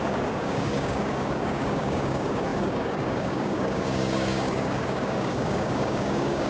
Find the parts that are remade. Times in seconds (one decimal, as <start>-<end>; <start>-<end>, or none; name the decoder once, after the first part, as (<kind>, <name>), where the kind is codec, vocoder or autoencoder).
0.0-6.5 (codec, DAC)